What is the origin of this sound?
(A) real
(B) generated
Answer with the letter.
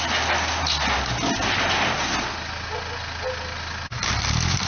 A